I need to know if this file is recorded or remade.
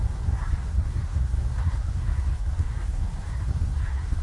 remade